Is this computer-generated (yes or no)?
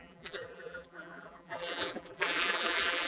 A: yes